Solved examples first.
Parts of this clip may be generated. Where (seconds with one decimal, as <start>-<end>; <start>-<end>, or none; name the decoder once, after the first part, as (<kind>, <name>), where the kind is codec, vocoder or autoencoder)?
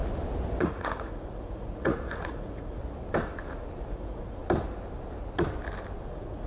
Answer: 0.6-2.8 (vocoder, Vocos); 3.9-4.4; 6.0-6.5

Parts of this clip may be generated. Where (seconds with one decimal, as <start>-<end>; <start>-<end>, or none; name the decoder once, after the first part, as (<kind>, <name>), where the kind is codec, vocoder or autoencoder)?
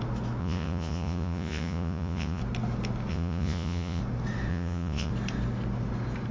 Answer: 0.4-2.4 (vocoder, Vocos); 3.1-4.0; 4.5-5.1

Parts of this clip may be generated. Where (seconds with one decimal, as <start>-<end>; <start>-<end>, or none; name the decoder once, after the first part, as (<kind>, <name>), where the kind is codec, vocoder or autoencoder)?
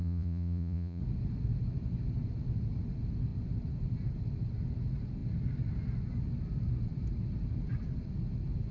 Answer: 0.0-1.0 (vocoder, Vocos)